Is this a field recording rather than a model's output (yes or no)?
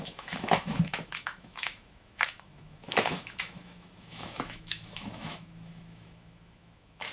no